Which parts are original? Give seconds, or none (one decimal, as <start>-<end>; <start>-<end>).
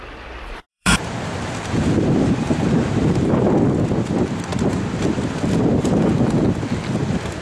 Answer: 0.0-0.7; 3.5-7.4